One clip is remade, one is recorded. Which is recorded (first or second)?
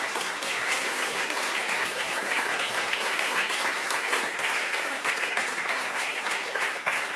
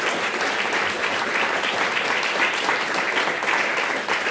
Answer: second